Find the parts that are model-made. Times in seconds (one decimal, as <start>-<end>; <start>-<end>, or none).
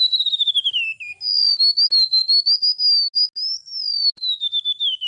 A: none